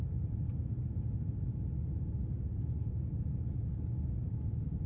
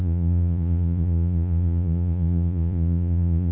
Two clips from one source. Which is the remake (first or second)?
second